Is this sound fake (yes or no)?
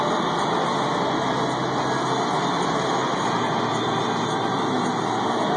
no